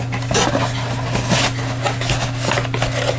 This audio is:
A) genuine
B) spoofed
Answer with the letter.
A